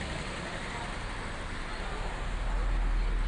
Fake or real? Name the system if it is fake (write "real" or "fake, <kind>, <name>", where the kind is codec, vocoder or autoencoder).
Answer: real